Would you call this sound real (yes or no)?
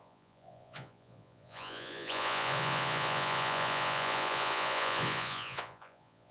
no